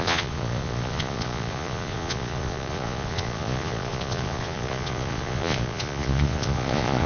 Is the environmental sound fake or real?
fake